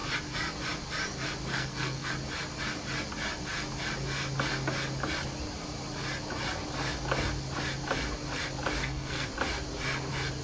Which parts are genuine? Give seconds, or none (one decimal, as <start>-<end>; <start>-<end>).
0.0-1.5; 2.1-8.8; 9.3-10.4